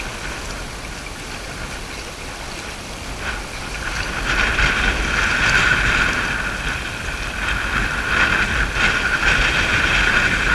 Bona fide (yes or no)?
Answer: yes